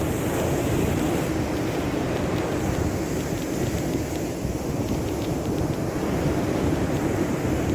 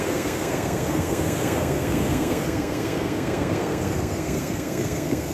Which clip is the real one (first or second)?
first